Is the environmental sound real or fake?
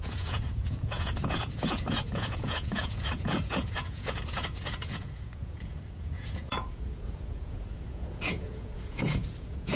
fake